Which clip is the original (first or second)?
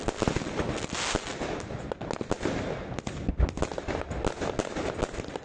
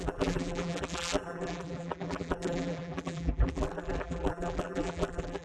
first